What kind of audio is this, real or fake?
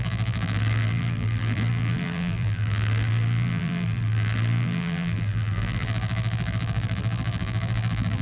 fake